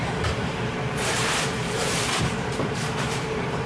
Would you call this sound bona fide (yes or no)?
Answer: no